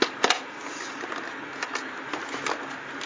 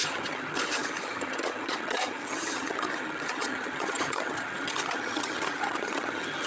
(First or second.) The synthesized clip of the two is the second